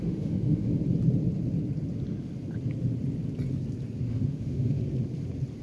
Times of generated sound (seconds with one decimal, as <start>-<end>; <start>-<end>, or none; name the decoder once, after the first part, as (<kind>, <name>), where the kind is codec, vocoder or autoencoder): 0.0-0.7 (autoencoder, DAC-VAE); 4.1-4.8